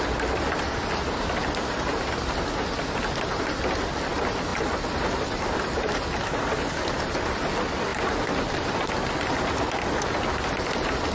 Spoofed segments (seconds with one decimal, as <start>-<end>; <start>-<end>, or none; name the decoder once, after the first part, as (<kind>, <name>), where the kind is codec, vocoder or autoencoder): none